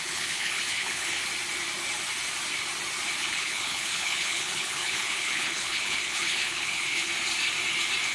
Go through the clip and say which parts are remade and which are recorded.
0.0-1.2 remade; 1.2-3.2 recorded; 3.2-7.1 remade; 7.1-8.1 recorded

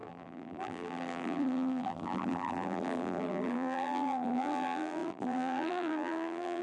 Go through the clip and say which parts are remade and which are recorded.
0.0-6.6 remade

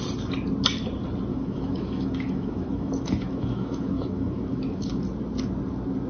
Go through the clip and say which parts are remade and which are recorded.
0.0-1.3 recorded; 1.3-5.0 remade; 5.0-6.1 recorded

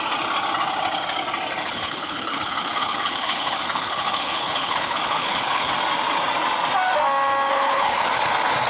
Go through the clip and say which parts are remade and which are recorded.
0.0-1.6 recorded; 1.6-5.7 remade; 5.7-7.5 recorded; 7.5-8.1 remade; 8.1-8.7 recorded

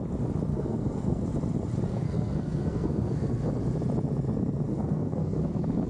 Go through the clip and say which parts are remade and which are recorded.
0.0-0.5 recorded; 0.5-1.2 remade; 1.2-1.9 recorded; 1.9-3.5 remade; 3.5-4.7 recorded; 4.7-5.9 remade